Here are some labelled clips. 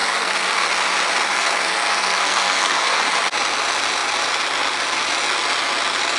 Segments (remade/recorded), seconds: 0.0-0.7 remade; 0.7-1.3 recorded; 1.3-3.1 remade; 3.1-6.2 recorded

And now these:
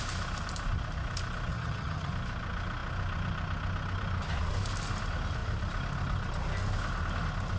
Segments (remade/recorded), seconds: 0.0-1.5 recorded; 1.5-2.1 remade; 2.1-7.6 recorded

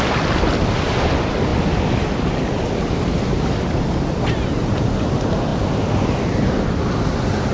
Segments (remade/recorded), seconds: 0.0-7.5 recorded

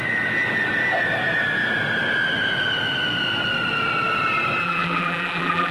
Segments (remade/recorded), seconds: 0.0-4.6 recorded; 4.6-5.7 remade

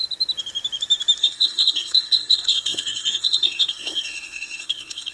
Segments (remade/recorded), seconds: 0.0-1.2 recorded; 1.2-5.1 remade

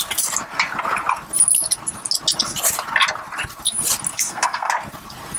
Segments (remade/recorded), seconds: 0.0-4.1 recorded; 4.1-4.7 remade; 4.7-5.4 recorded